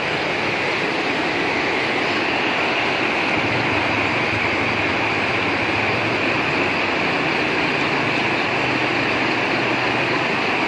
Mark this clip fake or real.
real